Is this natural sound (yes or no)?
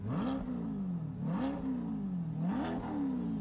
yes